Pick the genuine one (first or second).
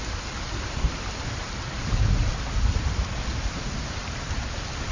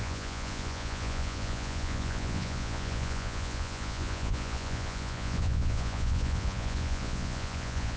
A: first